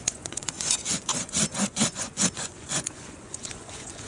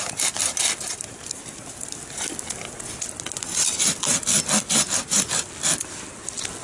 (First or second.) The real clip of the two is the second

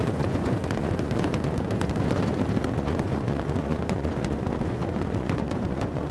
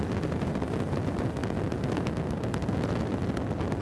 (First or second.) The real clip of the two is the second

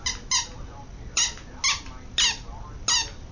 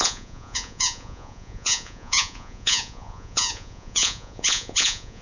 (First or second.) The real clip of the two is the first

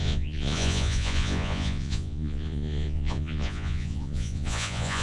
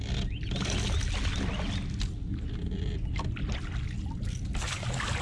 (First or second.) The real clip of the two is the second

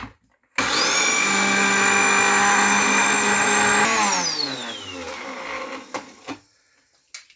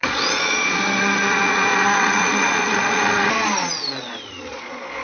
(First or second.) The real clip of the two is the first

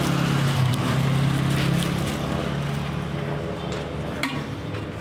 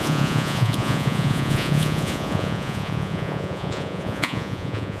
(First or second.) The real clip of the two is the first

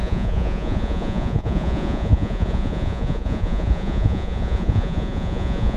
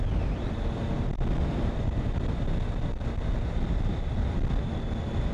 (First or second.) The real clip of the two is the second